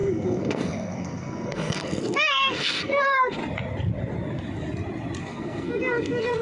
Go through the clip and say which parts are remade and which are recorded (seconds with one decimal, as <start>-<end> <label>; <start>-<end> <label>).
0.0-3.4 remade; 3.4-5.2 recorded; 5.2-6.4 remade

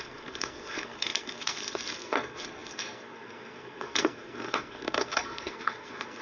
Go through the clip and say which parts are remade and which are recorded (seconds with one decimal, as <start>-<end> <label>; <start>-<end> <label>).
0.0-6.2 remade

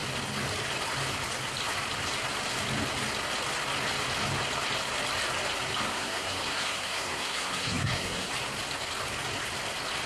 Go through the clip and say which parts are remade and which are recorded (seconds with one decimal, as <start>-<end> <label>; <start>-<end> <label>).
0.0-5.9 recorded; 5.9-8.3 remade; 8.3-10.1 recorded

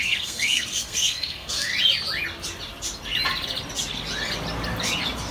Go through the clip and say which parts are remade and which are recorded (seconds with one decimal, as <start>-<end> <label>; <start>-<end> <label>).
0.0-1.7 remade; 1.7-5.3 recorded